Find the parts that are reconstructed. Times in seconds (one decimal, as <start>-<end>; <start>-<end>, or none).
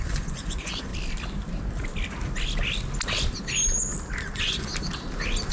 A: 0.0-0.9; 4.2-4.7